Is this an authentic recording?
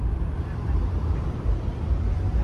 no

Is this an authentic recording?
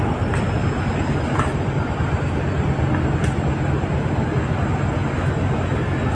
yes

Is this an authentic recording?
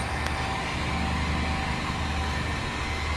yes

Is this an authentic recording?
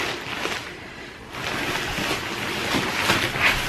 yes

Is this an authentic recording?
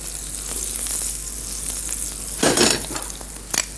yes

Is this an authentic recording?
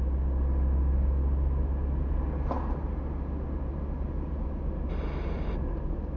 yes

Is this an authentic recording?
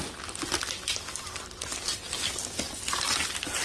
yes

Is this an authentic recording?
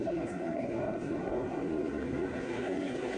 no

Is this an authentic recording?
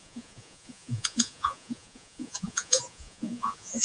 no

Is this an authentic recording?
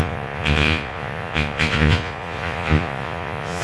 no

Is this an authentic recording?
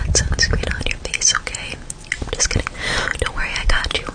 yes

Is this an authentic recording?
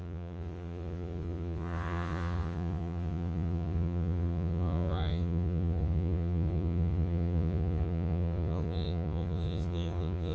no